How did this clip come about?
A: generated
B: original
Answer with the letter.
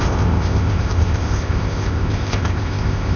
A